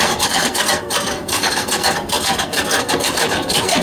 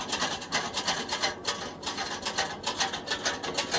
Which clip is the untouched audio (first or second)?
second